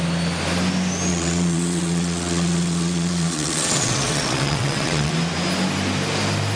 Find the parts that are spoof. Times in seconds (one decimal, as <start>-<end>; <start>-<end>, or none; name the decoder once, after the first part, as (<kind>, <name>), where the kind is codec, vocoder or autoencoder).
1.1-5.1 (vocoder, WaveNeXt)